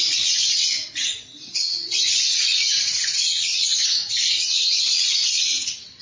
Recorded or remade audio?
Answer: remade